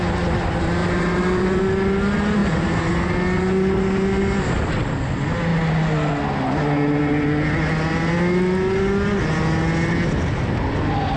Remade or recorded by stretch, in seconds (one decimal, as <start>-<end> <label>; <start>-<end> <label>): 0.0-0.8 recorded; 0.8-1.6 remade; 1.6-2.4 recorded; 2.4-2.9 remade; 2.9-11.2 recorded